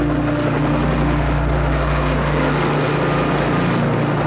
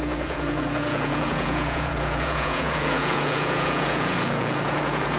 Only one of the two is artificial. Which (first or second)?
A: second